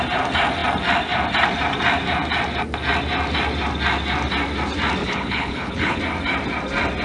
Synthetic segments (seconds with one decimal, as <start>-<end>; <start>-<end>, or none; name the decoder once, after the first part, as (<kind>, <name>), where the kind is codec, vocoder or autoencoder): 5.0-6.0 (codec, HILCodec)